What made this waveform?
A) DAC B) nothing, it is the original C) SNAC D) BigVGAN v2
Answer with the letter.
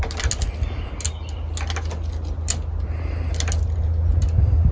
B